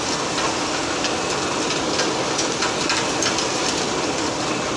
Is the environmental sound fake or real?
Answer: real